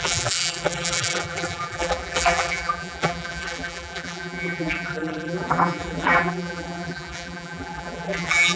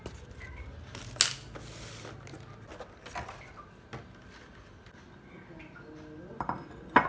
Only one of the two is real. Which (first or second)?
second